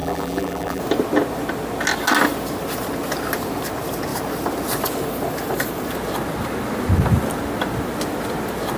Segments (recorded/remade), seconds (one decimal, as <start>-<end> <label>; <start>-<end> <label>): 0.0-0.8 remade; 0.8-8.8 recorded